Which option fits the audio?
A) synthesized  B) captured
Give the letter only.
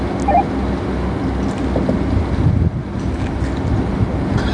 B